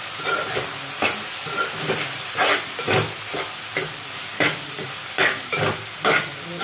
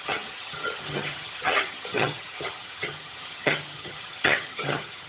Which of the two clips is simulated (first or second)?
second